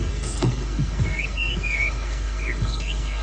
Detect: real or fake fake